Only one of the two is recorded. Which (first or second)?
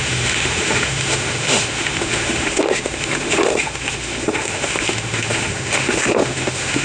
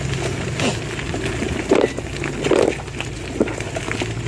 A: second